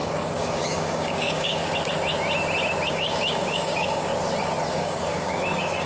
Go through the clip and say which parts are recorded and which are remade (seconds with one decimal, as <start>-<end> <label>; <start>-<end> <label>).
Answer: 0.0-1.6 remade; 1.6-2.9 recorded; 2.9-4.1 remade; 4.1-4.7 recorded; 4.7-5.9 remade